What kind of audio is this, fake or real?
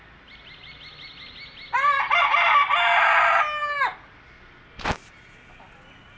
real